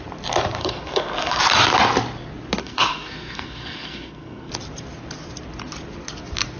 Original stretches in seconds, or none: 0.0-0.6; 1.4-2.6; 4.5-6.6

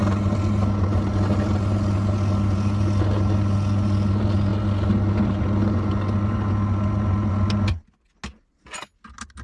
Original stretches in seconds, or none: 0.0-9.4

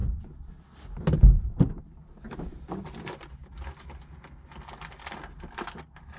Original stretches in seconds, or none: 0.0-6.2

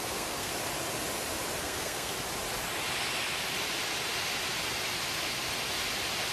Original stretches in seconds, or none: 0.5-1.6; 2.1-6.3